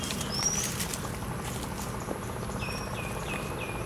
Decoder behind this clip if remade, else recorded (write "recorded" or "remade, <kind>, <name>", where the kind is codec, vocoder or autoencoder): recorded